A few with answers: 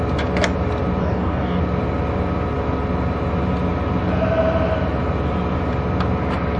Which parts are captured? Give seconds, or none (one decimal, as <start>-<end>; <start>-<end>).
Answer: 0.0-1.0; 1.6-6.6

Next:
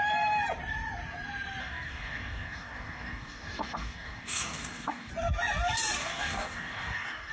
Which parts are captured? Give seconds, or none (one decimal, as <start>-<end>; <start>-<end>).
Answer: 0.0-1.6; 5.1-6.0

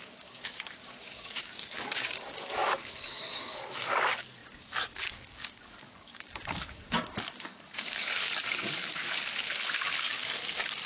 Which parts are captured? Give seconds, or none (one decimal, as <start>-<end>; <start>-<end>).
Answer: none